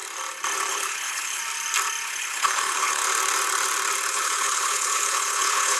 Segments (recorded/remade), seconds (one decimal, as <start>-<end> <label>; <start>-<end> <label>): 0.0-0.7 recorded; 0.7-1.4 remade; 1.4-2.1 recorded; 2.1-3.0 remade; 3.0-4.1 recorded; 4.1-5.8 remade